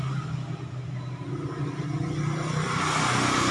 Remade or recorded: recorded